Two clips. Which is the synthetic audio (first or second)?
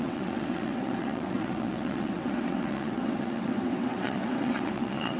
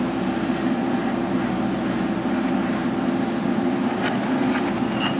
first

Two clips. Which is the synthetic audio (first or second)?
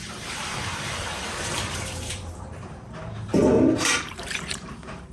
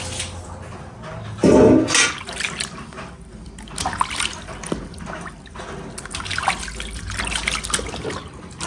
first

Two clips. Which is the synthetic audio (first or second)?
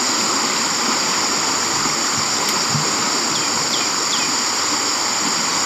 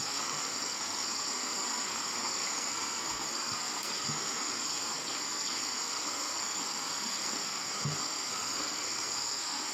second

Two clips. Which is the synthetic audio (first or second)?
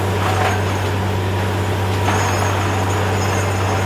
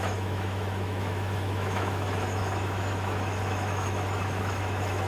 second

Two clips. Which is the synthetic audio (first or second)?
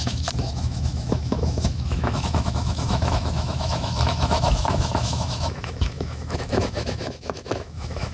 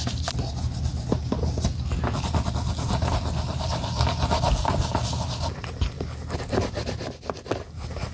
first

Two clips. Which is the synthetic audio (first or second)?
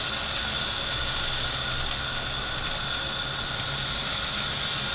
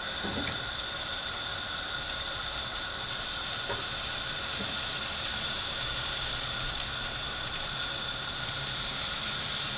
second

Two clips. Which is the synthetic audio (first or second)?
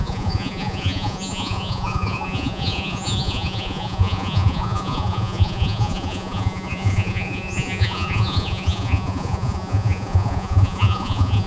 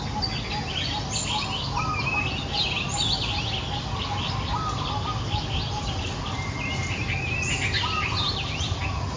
first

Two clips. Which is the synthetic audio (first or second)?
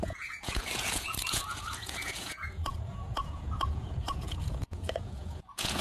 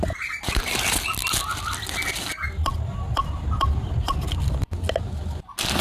first